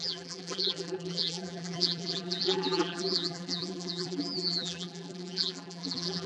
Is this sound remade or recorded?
remade